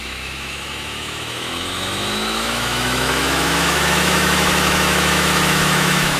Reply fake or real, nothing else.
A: fake